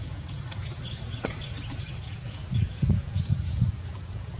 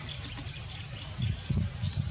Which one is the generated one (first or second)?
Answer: first